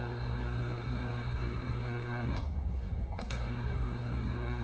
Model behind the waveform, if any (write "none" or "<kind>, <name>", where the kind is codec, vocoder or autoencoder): codec, SNAC